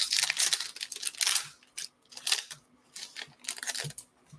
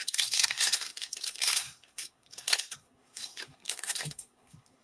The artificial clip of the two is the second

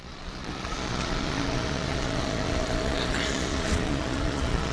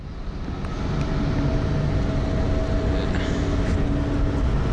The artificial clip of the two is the first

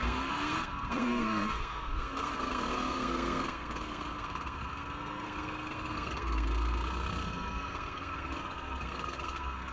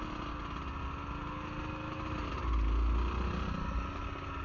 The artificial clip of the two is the first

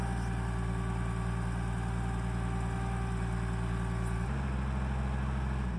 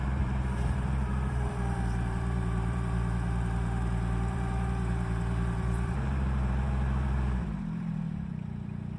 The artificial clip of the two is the second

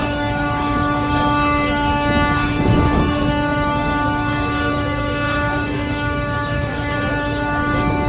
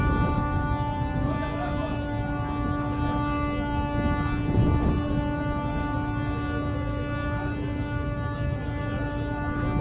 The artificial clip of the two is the first